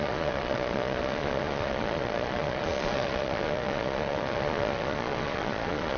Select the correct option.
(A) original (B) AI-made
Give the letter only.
B